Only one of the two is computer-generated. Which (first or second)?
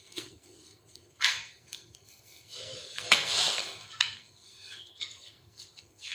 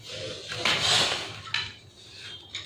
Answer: first